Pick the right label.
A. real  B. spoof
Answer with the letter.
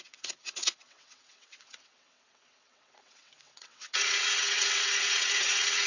B